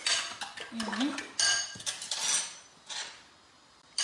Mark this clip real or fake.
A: real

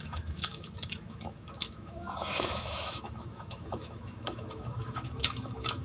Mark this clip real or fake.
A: fake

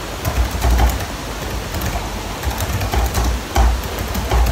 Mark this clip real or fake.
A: real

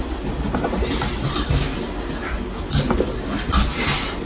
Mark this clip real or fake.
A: real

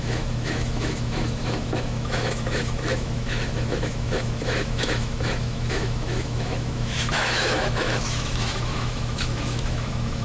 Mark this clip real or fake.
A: fake